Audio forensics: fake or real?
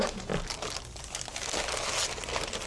real